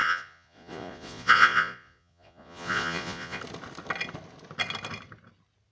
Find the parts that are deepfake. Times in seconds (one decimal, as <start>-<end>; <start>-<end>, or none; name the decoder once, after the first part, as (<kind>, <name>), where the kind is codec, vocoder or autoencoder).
0.0-3.4 (vocoder, Vocos)